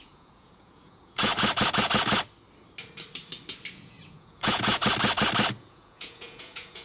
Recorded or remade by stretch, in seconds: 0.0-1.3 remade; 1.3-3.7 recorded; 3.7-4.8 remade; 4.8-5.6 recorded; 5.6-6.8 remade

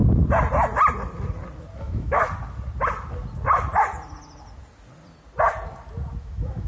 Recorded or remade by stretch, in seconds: 0.0-1.8 recorded; 1.8-2.2 remade; 2.2-6.2 recorded; 6.2-6.7 remade

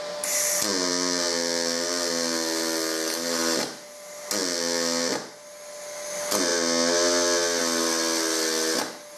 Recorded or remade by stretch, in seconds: 0.0-9.2 recorded